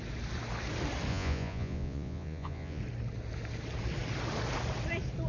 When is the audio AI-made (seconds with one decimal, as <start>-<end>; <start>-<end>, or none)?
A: 1.1-2.8